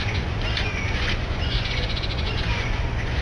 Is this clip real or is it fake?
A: fake